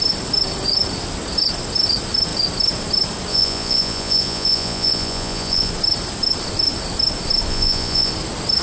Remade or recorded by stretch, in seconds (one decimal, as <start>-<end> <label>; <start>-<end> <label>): 0.0-3.3 recorded; 3.3-5.7 remade; 5.7-7.5 recorded; 7.5-8.1 remade; 8.1-8.6 recorded